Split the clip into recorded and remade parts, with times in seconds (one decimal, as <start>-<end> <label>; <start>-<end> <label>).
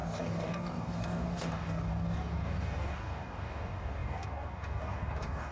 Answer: 0.0-5.5 remade